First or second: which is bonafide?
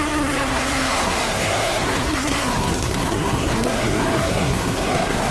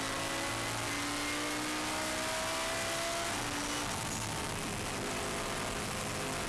second